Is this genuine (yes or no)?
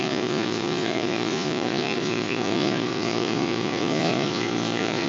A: no